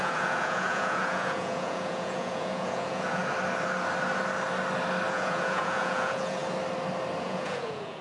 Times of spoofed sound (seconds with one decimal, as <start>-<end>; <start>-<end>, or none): 0.0-3.2; 5.1-6.4; 7.2-8.0